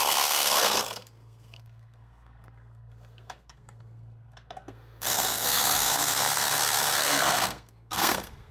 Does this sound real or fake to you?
fake